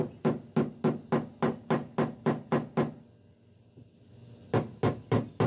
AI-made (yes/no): no